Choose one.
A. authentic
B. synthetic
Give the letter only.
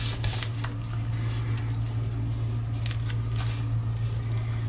A